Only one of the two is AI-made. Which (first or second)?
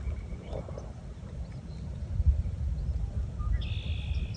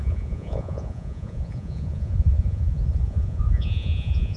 second